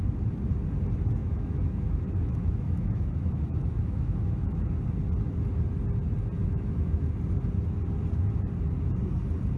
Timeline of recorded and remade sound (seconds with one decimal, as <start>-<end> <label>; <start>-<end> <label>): 0.0-1.2 recorded; 1.2-4.7 remade; 4.7-6.4 recorded; 6.4-7.1 remade; 7.1-9.6 recorded